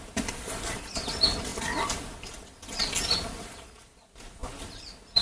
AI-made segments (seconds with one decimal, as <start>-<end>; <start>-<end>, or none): none